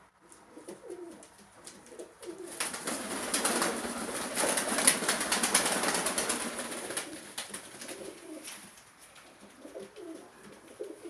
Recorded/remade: recorded